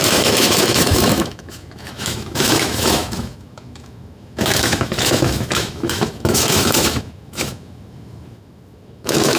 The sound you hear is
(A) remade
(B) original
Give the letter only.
A